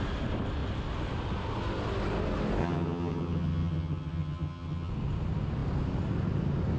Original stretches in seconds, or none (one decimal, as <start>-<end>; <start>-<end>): 0.0-2.6; 4.9-6.8